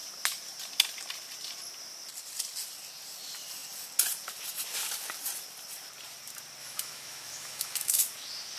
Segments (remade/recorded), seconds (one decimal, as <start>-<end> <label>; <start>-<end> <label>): 0.0-6.6 recorded; 6.6-8.0 remade; 8.0-8.6 recorded